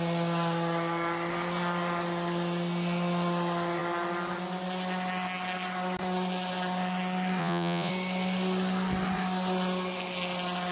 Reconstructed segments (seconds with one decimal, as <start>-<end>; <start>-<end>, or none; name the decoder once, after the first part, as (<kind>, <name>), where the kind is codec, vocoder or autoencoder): 7.4-7.9 (vocoder, Vocos)